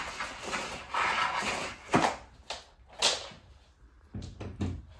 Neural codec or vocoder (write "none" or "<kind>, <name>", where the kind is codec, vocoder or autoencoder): none